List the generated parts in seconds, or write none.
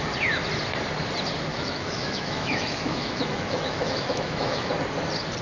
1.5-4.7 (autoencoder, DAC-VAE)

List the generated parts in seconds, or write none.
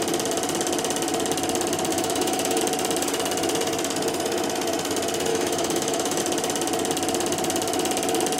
1.9-2.6 (autoencoder, DAC-VAE); 5.3-6.2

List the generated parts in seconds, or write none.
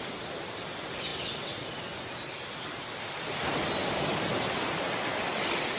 none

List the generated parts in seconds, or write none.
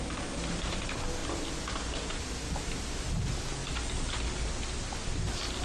none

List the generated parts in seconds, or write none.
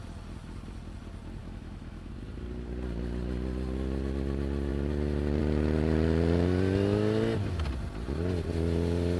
1.4-2.1 (autoencoder, DAC-VAE)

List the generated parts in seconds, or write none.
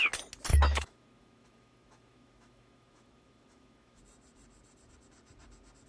0.5-4.0 (autoencoder, DAC-VAE)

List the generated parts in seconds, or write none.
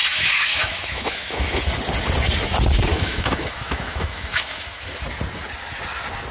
0.0-1.6 (autoencoder, DAC-VAE); 2.9-4.8